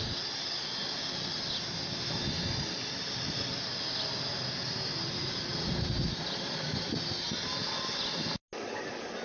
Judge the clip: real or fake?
real